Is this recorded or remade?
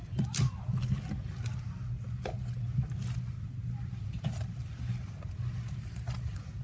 recorded